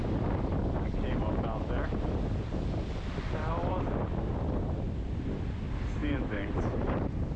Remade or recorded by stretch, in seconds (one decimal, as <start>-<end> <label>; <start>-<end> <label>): 0.0-6.0 recorded; 6.0-7.4 remade